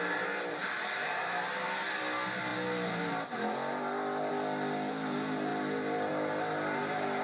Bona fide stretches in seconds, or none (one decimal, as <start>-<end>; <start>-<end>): 0.0-0.6; 2.0-2.5; 4.3-7.2